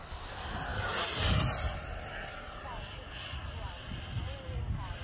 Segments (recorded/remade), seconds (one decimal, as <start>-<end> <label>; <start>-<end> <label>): 0.0-5.0 recorded